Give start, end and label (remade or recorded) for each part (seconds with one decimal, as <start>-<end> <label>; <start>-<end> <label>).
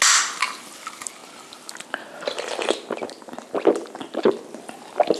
0.0-5.2 recorded